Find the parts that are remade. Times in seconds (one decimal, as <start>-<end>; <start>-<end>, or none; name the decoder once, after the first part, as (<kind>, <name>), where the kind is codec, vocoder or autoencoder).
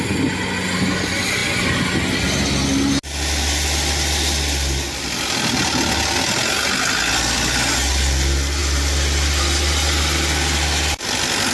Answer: none